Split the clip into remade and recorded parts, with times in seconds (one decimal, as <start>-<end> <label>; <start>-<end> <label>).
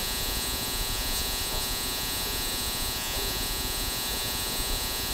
0.0-5.1 remade